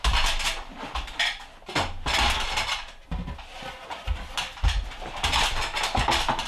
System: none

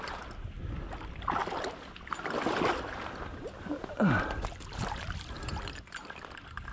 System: none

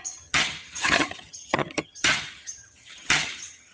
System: vocoder, HiFi-GAN